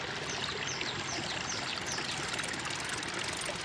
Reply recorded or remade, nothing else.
recorded